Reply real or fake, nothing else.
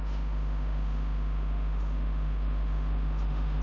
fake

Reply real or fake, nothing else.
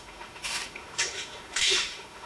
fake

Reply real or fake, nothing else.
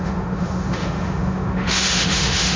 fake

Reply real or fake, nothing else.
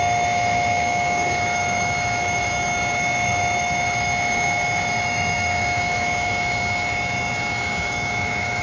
fake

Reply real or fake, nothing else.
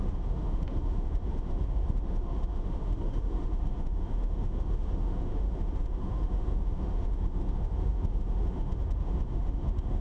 fake